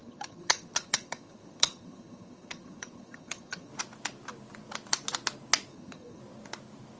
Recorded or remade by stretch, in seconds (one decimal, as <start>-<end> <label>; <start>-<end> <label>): 0.0-3.7 remade; 3.7-5.7 recorded; 5.7-6.2 remade; 6.2-7.0 recorded